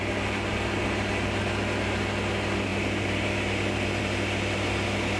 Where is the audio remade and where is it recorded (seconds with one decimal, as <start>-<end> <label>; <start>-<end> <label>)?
0.0-5.2 recorded